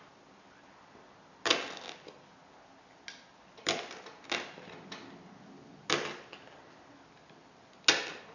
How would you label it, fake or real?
real